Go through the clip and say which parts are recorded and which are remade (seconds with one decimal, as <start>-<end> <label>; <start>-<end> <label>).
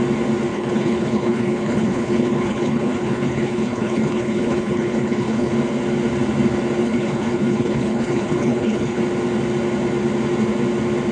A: 0.0-0.5 recorded; 0.5-5.5 remade; 5.5-6.8 recorded; 6.8-9.0 remade; 9.0-11.1 recorded